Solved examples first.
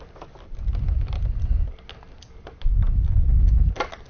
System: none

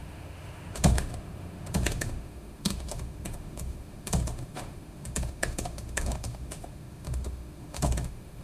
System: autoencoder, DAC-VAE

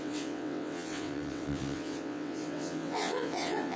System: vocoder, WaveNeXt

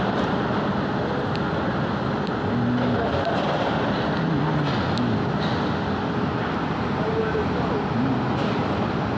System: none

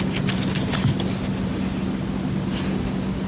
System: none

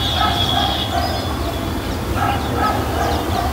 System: none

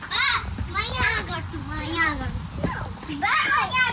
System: vocoder, BigVGAN v2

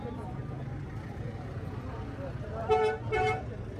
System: none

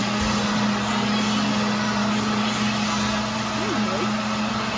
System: none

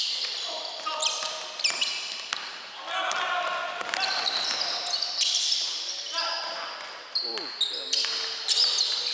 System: none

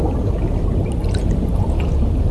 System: none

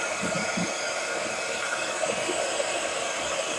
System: codec, DAC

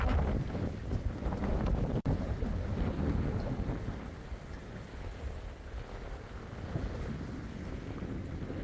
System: none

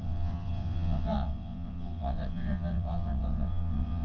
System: vocoder, WaveNeXt